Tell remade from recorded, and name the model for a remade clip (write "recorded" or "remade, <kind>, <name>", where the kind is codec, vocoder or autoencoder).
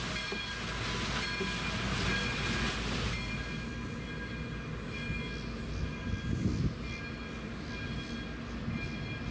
recorded